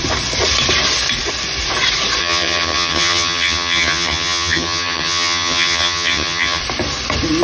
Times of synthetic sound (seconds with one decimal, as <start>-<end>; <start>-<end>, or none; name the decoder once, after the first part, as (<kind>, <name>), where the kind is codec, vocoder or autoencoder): 2.2-6.6 (vocoder, HiFi-GAN)